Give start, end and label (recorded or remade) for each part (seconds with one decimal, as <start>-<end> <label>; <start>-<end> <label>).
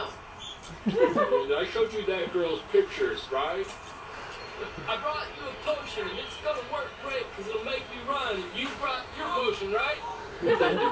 0.0-2.2 recorded; 2.2-3.3 remade; 3.3-8.1 recorded; 8.1-10.5 remade; 10.5-10.9 recorded